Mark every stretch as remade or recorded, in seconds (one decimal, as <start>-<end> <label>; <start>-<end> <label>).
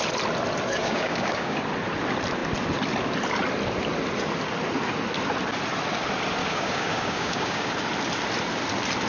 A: 0.0-0.8 recorded; 0.8-1.6 remade; 1.6-6.4 recorded; 6.4-7.7 remade; 7.7-9.1 recorded